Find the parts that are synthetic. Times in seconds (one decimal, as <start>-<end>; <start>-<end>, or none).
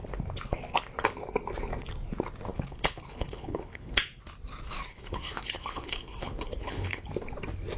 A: 2.5-3.9; 4.9-7.0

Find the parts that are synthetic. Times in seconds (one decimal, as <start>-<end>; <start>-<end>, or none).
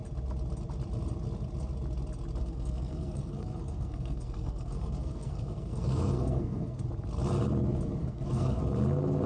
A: 2.4-6.8; 8.0-8.6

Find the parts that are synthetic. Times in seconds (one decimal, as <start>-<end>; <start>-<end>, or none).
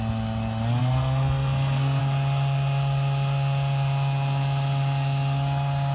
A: 0.8-2.0